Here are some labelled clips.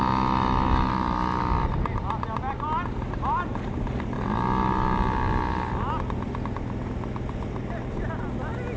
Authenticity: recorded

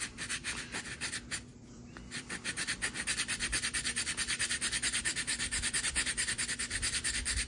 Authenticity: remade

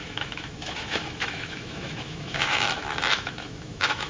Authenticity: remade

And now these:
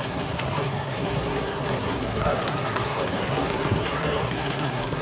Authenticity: remade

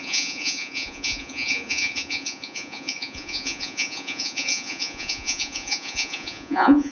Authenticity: remade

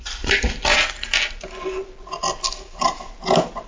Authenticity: recorded